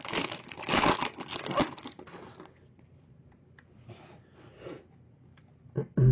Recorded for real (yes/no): yes